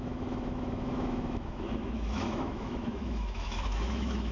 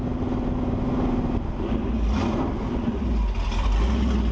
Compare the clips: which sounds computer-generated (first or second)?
first